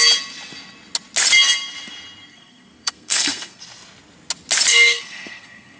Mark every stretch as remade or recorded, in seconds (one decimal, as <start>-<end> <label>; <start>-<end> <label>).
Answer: 0.0-2.3 recorded; 2.3-3.6 remade; 3.6-4.7 recorded; 4.7-5.8 remade